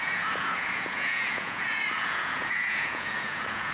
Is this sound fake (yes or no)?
yes